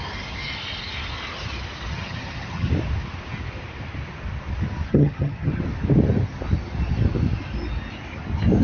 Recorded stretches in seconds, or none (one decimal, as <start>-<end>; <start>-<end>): 0.0-1.9; 2.7-4.9; 5.6-8.6